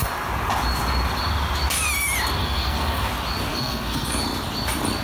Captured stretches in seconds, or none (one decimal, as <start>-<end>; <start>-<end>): 0.0-2.4; 3.1-3.5; 4.2-5.0